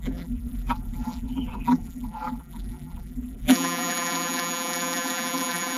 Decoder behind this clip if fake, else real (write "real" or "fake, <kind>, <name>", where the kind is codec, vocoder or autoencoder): fake, vocoder, BigVGAN v2